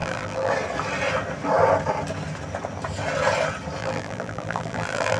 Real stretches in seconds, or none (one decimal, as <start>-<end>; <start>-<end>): 0.5-3.8